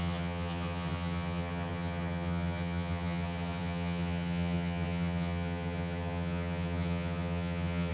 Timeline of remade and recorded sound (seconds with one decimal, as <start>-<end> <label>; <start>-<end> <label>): 0.0-7.9 remade